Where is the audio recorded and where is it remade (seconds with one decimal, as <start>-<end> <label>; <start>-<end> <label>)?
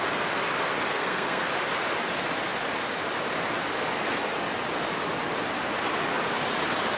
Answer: 0.0-0.9 recorded; 0.9-1.5 remade; 1.5-7.0 recorded